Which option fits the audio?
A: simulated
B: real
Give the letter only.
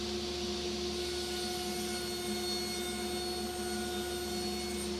B